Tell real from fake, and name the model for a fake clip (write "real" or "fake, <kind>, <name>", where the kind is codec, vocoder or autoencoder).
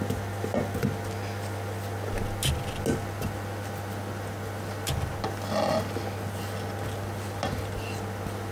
real